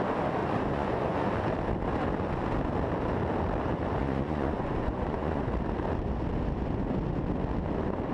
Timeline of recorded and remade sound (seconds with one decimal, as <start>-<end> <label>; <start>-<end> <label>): 0.0-0.4 recorded; 0.4-1.3 remade; 1.3-4.0 recorded; 4.0-5.5 remade; 5.5-8.1 recorded